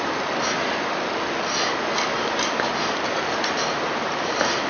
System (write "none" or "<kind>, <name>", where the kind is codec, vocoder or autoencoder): none